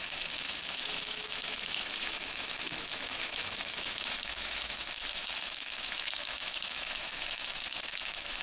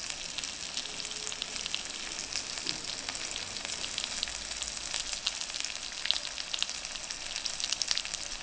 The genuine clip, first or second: second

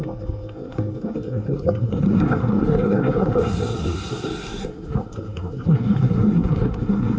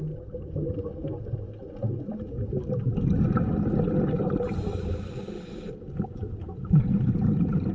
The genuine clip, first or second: second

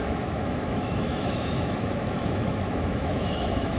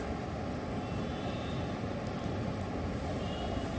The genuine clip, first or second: second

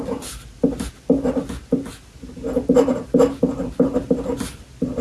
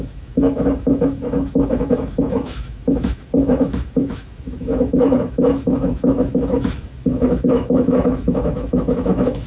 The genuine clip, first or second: first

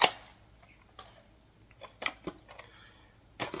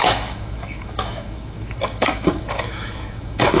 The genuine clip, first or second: first